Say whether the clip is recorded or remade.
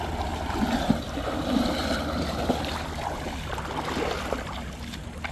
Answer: recorded